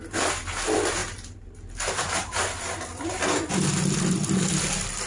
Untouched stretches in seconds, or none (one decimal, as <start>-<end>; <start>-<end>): 0.0-5.1